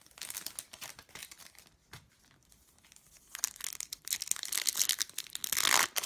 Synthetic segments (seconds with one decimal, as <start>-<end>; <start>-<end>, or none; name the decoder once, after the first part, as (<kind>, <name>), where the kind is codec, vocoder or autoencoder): none